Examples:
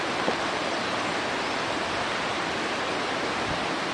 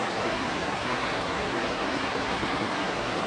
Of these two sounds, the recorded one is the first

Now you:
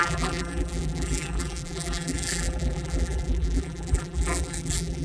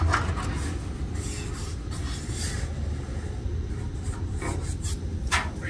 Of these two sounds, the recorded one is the second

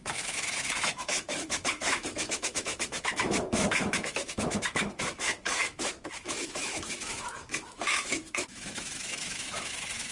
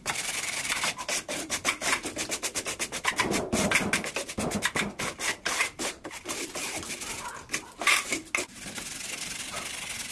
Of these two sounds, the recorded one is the second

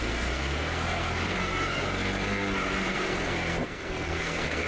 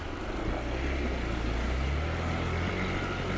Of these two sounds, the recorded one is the second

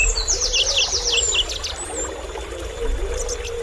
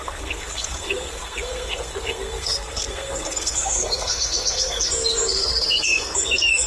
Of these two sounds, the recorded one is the first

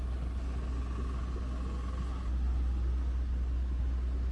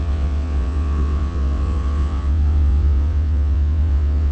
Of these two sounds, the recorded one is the first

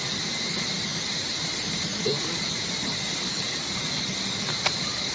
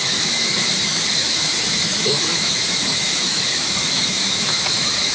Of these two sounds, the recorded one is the first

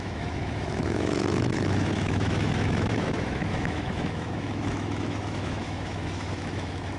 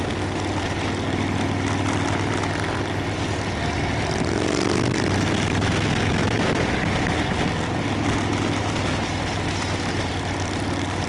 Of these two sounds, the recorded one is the second